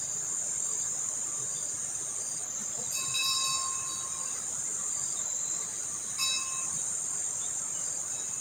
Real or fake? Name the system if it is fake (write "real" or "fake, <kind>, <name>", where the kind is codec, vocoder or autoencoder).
real